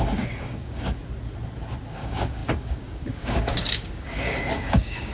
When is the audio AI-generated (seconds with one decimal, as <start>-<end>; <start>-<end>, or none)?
0.0-1.0; 1.9-5.1